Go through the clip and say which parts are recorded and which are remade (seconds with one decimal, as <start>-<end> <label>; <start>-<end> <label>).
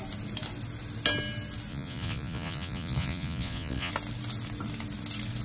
0.0-1.7 recorded; 1.7-3.9 remade; 3.9-5.4 recorded